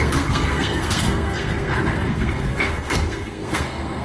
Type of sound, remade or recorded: remade